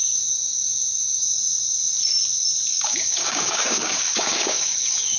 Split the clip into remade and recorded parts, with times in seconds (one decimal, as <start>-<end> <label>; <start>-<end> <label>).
0.0-1.4 remade; 1.4-2.7 recorded; 2.7-5.2 remade